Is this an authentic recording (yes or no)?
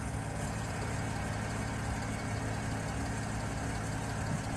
yes